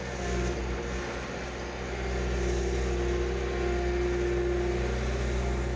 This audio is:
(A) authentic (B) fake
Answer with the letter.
A